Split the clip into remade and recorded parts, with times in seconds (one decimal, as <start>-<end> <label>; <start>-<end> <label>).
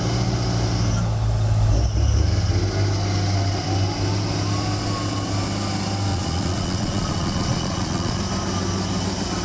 0.0-6.1 recorded; 6.1-8.2 remade; 8.2-9.4 recorded